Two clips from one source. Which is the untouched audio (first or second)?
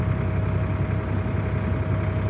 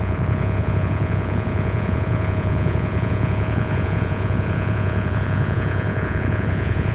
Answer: first